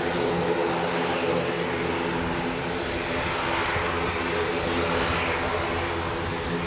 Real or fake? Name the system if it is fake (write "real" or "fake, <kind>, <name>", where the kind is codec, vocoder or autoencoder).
real